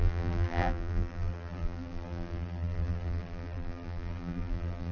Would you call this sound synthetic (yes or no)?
yes